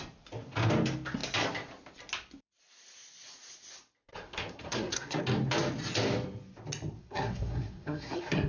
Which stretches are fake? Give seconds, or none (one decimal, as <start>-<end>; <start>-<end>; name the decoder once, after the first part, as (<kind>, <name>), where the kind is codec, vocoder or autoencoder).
4.1-5.2 (codec, SNAC); 7.0-8.5

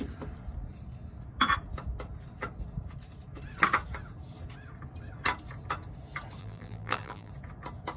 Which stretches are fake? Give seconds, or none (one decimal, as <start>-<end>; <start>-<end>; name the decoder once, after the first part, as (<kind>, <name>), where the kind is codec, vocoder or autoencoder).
6.4-7.3 (vocoder, BigVGAN v2)

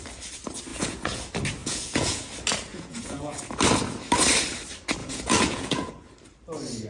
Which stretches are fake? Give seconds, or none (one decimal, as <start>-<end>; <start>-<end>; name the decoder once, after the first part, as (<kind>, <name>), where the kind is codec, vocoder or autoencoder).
0.7-1.2 (vocoder, Vocos); 1.6-2.2; 2.7-3.4; 5.0-5.9